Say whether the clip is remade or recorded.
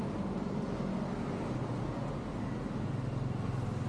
recorded